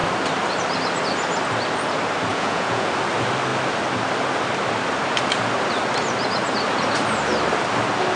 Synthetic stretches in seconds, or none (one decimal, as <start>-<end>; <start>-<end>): 2.3-2.9